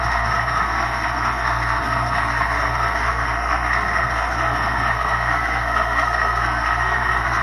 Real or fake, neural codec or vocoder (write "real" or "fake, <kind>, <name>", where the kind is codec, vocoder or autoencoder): fake, codec, SNAC